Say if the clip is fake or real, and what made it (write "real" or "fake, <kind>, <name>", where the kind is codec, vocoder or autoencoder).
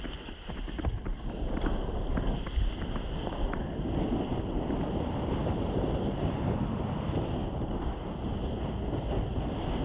real